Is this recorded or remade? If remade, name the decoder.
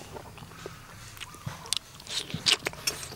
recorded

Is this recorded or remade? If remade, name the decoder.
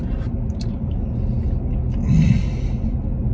recorded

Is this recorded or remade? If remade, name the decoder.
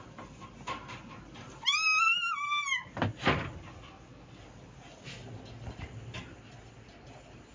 recorded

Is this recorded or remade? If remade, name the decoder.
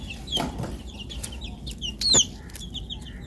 recorded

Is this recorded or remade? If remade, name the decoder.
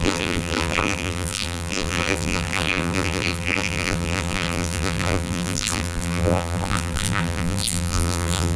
remade, vocoder, BigVGAN v2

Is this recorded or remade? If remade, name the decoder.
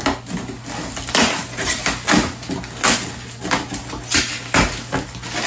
recorded